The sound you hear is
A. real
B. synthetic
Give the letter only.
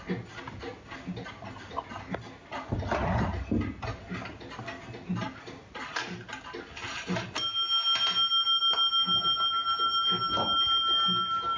A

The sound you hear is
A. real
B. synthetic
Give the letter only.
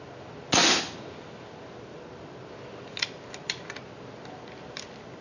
A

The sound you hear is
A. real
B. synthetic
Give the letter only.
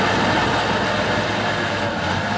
A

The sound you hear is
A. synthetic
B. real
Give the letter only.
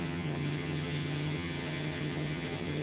A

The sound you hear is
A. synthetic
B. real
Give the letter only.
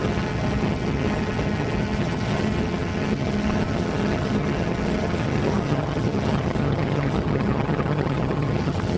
A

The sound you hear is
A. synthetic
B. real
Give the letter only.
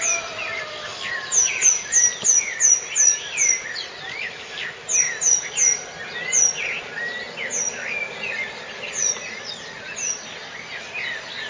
B